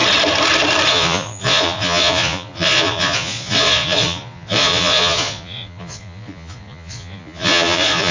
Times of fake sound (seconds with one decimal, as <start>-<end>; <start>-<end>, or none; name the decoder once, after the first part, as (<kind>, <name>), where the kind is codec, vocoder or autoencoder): 0.9-8.1 (vocoder, Vocos)